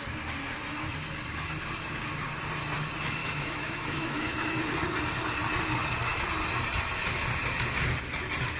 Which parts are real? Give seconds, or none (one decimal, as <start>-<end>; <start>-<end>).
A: 0.0-3.2; 4.6-8.6